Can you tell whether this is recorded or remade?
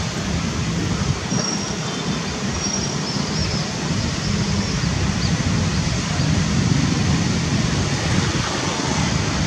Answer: recorded